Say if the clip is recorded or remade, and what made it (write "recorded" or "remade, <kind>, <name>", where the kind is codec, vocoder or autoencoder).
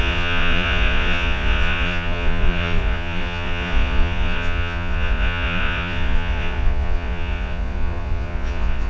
remade, vocoder, Vocos